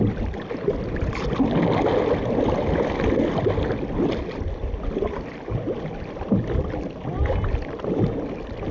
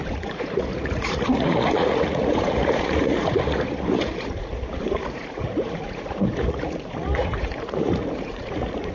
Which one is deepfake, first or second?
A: second